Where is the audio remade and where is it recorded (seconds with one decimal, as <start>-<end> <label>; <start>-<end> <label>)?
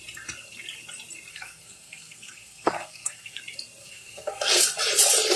0.0-1.3 recorded; 1.3-3.4 remade; 3.4-3.8 recorded; 3.8-4.6 remade; 4.6-5.4 recorded